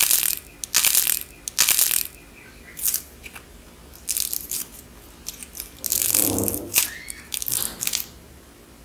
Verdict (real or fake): real